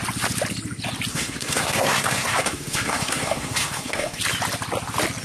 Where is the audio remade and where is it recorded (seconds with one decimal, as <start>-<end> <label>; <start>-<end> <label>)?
0.0-1.1 recorded; 1.1-4.2 remade; 4.2-5.2 recorded